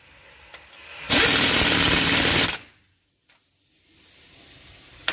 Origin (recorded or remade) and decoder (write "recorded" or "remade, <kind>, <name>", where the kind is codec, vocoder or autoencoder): recorded